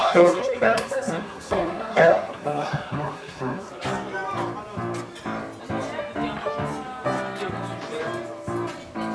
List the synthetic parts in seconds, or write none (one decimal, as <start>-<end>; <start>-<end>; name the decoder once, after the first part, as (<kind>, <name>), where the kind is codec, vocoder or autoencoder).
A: 0.0-3.7 (codec, SNAC)